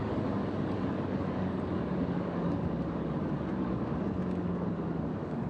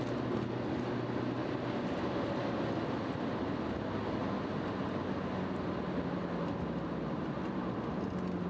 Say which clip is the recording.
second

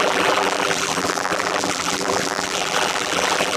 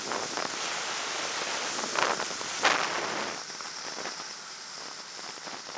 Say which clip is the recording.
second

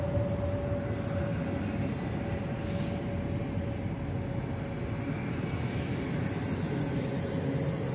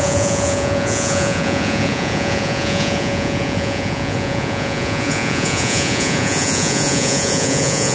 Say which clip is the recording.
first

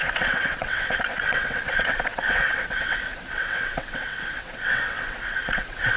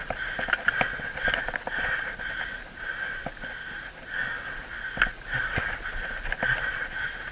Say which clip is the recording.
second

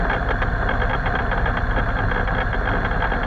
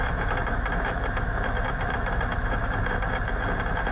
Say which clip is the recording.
first